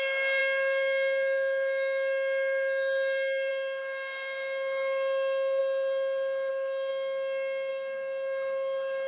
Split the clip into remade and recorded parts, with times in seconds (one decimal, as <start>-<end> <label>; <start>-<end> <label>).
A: 0.0-6.9 remade; 6.9-7.7 recorded; 7.7-9.1 remade

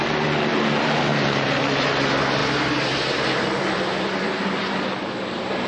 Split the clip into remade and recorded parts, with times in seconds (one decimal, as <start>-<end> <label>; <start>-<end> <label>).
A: 0.0-0.5 recorded; 0.5-1.6 remade; 1.6-5.7 recorded

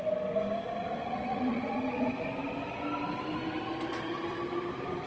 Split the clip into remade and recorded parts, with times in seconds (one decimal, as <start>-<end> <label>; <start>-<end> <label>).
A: 0.0-0.8 recorded; 0.8-2.1 remade; 2.1-5.1 recorded

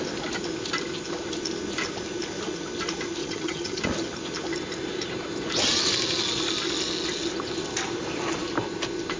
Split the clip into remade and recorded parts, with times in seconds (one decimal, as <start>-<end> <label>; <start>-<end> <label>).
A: 0.0-3.2 recorded; 3.2-3.8 remade; 3.8-9.2 recorded

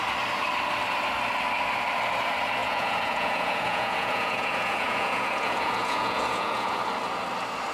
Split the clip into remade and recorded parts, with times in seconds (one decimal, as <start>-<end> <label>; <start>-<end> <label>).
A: 0.0-2.6 recorded; 2.6-6.8 remade; 6.8-7.7 recorded

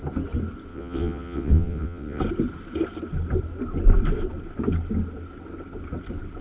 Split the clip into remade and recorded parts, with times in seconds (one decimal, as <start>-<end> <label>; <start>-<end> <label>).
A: 0.0-0.7 recorded; 0.7-2.2 remade; 2.2-6.4 recorded

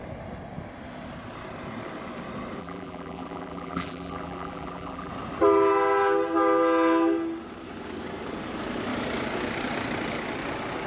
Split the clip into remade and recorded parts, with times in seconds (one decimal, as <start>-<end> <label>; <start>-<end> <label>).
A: 0.0-2.6 recorded; 2.6-5.1 remade; 5.1-10.9 recorded